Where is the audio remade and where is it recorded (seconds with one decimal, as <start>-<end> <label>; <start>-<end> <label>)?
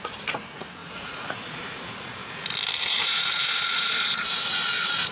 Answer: 0.0-2.2 remade; 2.2-2.7 recorded; 2.7-5.1 remade